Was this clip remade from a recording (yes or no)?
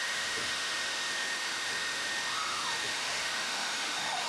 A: yes